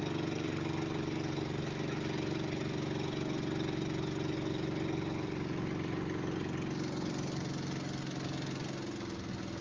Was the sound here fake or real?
real